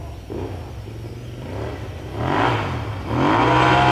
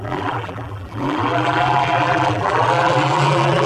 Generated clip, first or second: second